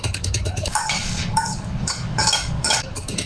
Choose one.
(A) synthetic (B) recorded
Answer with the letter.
A